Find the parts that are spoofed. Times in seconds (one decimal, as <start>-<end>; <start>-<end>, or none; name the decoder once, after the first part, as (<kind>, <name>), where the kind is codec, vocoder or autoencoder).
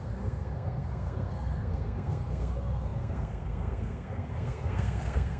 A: 0.0-5.4 (codec, SNAC)